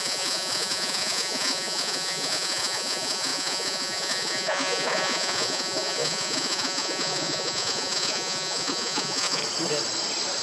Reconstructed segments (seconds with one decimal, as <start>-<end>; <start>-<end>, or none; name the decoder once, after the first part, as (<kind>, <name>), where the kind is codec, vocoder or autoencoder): 0.0-9.4 (vocoder, Vocos)